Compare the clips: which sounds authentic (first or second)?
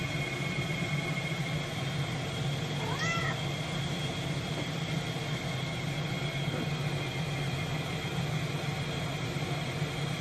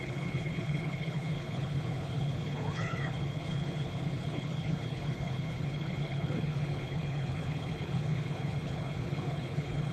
first